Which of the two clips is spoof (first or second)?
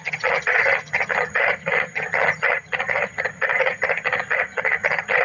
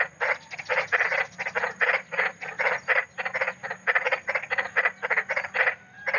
first